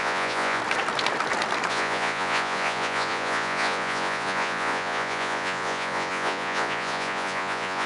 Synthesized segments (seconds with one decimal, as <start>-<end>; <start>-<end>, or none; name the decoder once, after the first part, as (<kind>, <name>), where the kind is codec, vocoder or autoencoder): 0.0-0.6 (vocoder, Vocos); 1.7-7.9